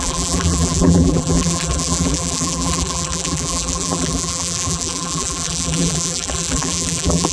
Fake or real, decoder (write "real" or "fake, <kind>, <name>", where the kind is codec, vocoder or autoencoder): fake, vocoder, BigVGAN v2